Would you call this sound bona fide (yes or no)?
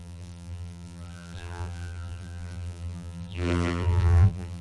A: no